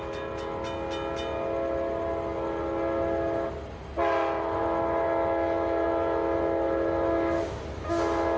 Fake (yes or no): no